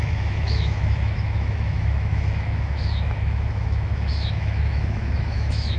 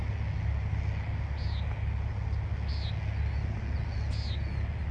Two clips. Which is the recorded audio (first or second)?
second